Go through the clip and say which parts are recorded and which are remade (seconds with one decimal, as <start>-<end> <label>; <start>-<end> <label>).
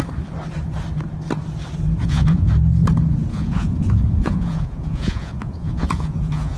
0.0-2.0 recorded; 2.0-2.5 remade; 2.5-3.3 recorded; 3.3-6.6 remade